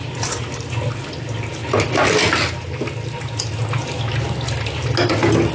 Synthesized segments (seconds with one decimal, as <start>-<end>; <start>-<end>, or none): none